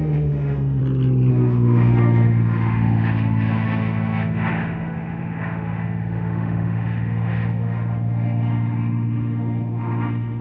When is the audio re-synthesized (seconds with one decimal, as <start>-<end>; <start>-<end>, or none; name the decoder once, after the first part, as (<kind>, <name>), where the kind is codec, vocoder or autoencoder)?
0.0-0.8 (autoencoder, DAC-VAE); 1.3-10.4